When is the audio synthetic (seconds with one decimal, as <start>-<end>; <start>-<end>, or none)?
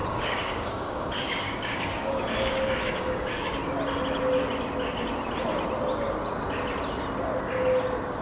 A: 0.0-3.6